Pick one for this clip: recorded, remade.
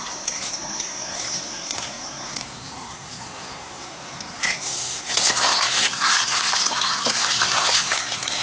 remade